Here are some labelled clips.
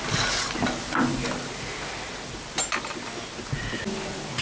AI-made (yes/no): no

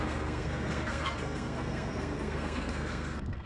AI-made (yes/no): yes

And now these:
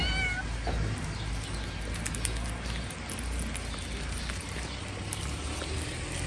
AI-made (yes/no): no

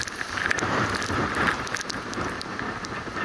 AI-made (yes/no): no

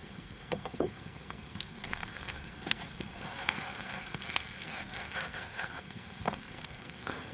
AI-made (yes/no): yes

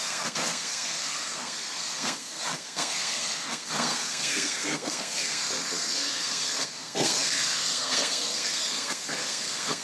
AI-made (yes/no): yes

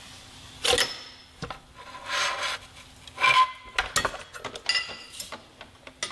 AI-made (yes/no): no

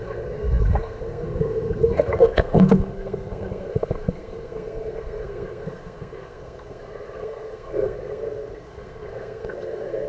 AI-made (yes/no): yes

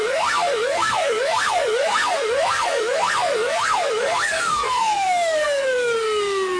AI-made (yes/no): yes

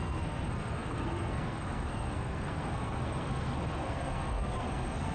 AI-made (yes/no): yes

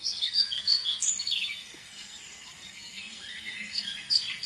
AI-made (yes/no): yes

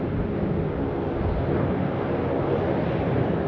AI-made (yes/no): no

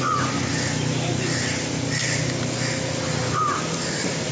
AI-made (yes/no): no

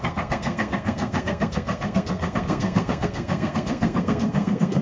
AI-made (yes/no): yes